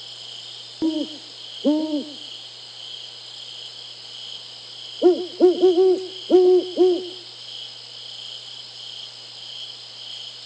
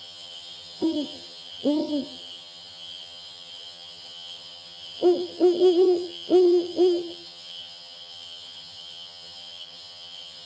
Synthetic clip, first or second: second